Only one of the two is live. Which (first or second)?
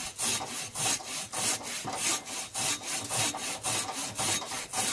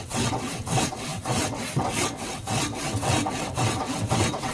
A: first